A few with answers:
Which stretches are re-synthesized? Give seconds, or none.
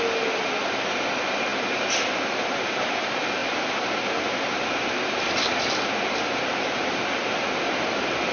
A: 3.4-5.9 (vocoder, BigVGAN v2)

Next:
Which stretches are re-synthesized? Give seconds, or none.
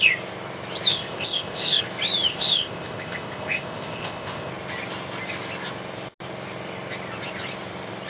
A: 0.9-1.8 (codec, ZipCodec); 2.3-4.5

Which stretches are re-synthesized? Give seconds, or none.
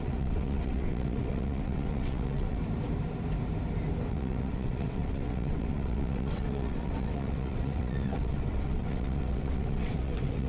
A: 0.0-2.6 (vocoder, WaveNeXt); 4.1-10.5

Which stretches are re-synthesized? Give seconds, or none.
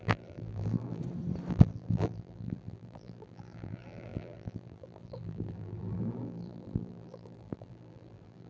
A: 0.0-1.0 (vocoder, BigVGAN v2); 1.5-8.5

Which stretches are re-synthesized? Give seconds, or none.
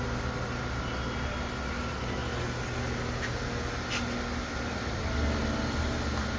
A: none